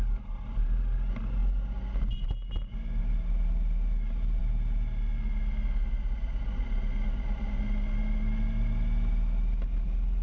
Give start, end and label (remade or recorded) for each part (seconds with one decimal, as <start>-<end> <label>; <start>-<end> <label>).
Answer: 0.0-10.2 recorded